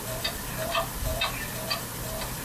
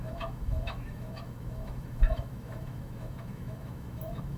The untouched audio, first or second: first